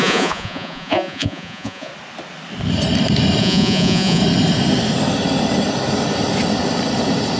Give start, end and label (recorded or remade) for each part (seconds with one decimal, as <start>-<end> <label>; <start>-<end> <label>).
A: 0.0-1.9 remade; 1.9-3.4 recorded; 3.4-4.2 remade; 4.2-7.4 recorded